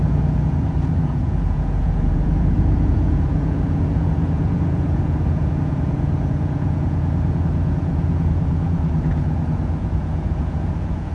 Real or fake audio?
fake